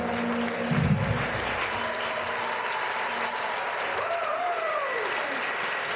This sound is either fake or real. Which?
real